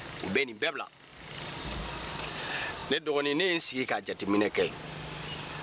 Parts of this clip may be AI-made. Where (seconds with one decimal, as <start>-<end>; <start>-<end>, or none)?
1.1-1.8

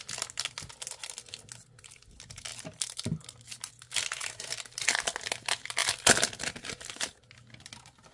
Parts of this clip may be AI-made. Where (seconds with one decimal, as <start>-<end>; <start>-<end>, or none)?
none

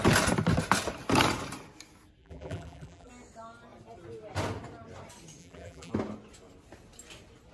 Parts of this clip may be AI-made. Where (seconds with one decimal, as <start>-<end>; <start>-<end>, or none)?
2.2-3.1; 5.4-5.9

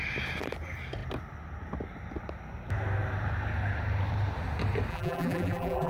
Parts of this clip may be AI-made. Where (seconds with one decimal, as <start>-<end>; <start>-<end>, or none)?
4.9-5.9